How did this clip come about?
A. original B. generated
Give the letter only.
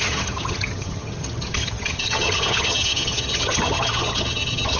B